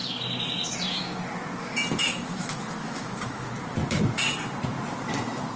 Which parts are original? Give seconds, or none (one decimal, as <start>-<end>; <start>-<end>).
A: 0.0-2.0; 3.5-5.6